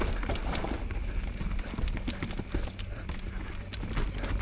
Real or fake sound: real